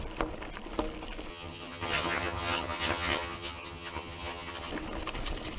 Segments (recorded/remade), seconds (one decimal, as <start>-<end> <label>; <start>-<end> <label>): 0.0-1.3 recorded; 1.3-4.7 remade; 4.7-5.6 recorded